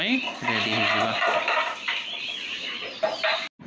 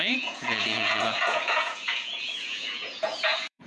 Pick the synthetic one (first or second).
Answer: second